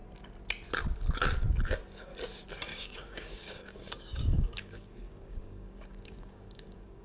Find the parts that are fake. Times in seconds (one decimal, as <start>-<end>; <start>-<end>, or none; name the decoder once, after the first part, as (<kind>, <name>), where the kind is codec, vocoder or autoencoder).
2.7-7.0 (codec, DAC)